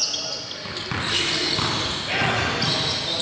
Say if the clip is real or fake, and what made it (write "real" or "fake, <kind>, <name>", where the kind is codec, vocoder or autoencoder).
real